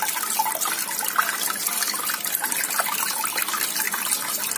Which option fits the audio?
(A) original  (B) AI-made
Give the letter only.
A